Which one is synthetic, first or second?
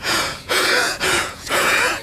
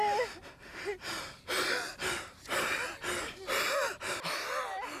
first